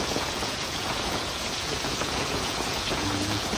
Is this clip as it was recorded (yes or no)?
no